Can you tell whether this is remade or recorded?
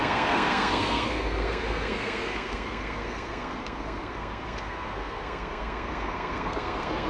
remade